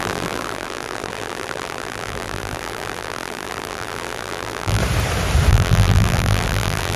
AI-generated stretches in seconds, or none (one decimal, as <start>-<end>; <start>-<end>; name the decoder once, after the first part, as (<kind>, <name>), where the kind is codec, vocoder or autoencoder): 0.0-4.8 (vocoder, BigVGAN v2); 5.5-7.0